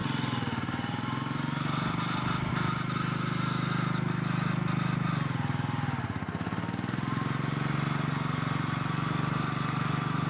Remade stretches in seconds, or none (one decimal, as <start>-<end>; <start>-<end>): none